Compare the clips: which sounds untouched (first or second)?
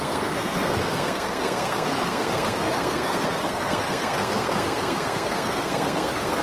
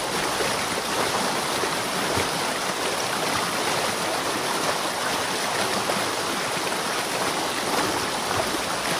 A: second